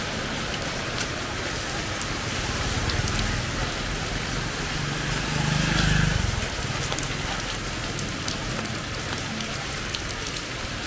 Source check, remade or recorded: recorded